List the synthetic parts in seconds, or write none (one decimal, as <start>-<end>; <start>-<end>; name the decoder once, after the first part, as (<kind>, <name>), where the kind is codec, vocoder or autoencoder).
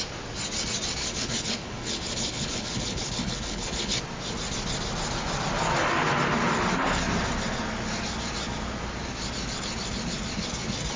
1.0-4.0 (codec, HILCodec)